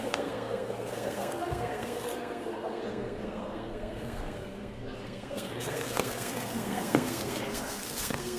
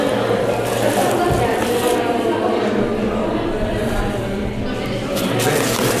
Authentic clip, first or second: second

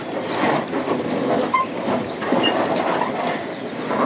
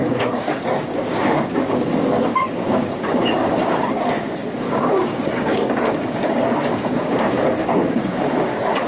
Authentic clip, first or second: first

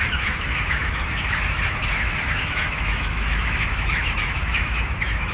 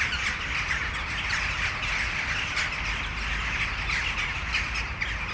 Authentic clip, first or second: second